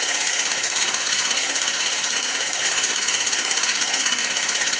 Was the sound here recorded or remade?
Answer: remade